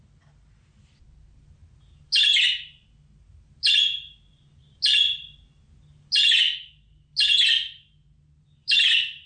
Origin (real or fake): real